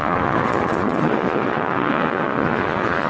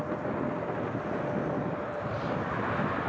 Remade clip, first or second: first